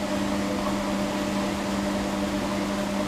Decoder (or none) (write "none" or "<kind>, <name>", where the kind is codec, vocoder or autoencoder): none